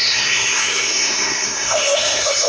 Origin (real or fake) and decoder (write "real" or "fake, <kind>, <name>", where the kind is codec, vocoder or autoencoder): fake, codec, SNAC